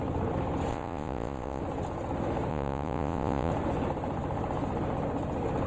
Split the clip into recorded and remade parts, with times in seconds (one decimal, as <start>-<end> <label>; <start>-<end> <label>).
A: 0.0-0.7 recorded; 0.7-1.6 remade; 1.6-2.5 recorded; 2.5-3.5 remade; 3.5-5.7 recorded